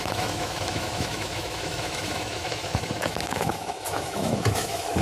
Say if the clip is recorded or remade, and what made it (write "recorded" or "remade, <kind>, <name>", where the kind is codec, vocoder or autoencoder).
remade, autoencoder, DAC-VAE